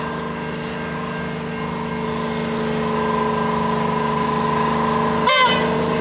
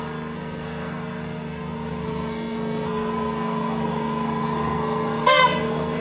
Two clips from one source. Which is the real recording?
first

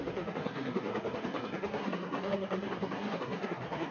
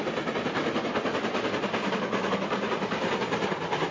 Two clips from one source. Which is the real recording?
second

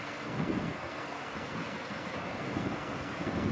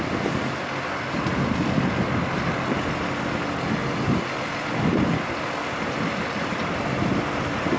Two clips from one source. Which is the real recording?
second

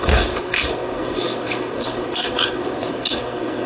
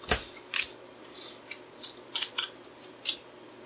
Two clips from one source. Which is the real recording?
second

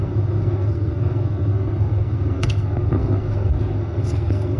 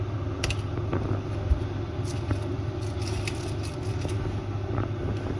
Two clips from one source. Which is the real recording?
second